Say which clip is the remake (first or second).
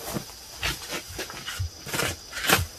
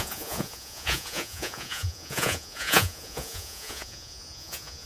second